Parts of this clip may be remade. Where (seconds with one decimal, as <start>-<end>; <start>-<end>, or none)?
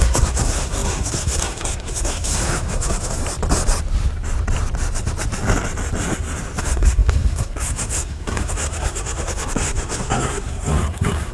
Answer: 0.0-3.2; 6.6-11.3